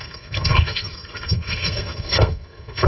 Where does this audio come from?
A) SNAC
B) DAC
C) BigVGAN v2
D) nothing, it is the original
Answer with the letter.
A